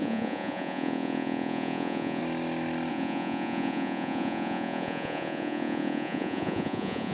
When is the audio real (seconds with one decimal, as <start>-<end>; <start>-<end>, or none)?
2.2-2.9